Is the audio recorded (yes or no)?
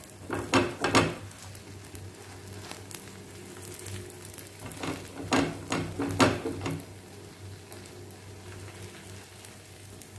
yes